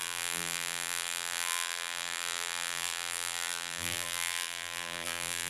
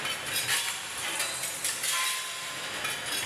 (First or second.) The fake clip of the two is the first